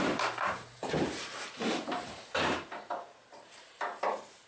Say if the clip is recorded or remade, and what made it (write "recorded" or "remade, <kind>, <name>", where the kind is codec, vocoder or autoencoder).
remade, vocoder, BigVGAN v2